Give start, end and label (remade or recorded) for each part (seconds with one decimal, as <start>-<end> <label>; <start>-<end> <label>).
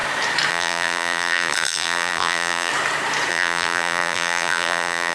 0.0-0.5 recorded; 0.5-2.7 remade; 2.7-3.3 recorded; 3.3-5.1 remade